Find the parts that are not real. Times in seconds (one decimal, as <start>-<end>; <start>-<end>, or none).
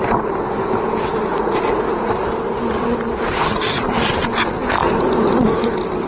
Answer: 1.3-2.1